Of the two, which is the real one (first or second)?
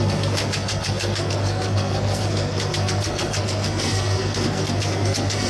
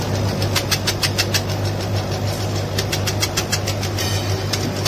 second